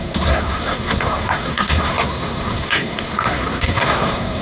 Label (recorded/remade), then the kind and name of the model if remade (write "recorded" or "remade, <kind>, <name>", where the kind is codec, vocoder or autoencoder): remade, codec, SNAC